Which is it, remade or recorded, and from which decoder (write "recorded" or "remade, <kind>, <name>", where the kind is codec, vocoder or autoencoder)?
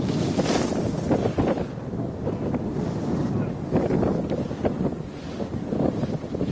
recorded